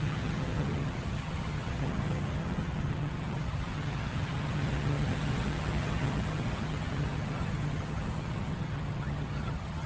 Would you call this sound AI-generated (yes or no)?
yes